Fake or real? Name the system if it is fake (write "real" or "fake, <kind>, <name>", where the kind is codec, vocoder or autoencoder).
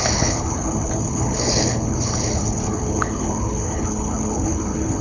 fake, codec, HILCodec